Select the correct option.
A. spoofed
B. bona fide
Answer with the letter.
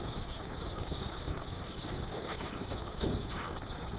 A